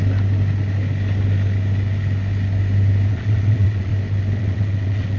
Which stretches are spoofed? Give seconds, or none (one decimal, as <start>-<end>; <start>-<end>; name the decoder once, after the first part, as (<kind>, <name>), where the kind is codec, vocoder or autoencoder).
3.1-3.9 (vocoder, WaveNeXt); 4.4-5.2